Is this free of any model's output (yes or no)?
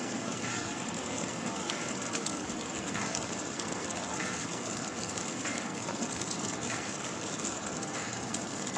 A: no